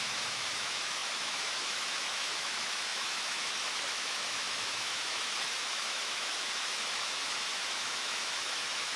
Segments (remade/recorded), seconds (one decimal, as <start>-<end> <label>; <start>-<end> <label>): 0.0-9.0 remade